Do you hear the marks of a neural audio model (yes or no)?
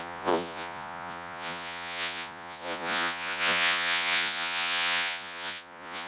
yes